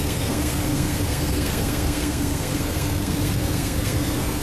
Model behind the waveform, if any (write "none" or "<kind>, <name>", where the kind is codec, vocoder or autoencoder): codec, SNAC